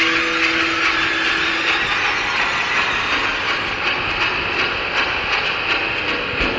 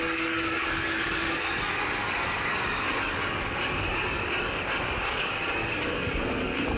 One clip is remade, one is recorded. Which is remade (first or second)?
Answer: second